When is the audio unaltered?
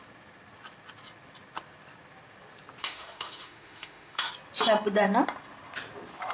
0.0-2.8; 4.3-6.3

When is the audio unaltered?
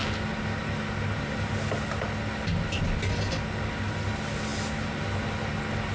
0.0-5.9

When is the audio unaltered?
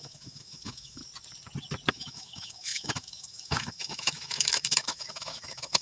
1.0-1.9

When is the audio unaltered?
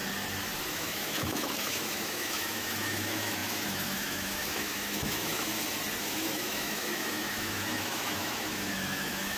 0.0-0.7; 5.5-6.0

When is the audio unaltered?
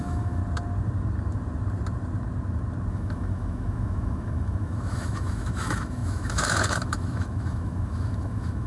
0.4-2.9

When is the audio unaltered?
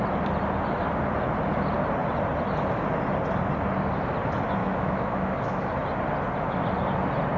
0.0-4.6; 5.7-7.4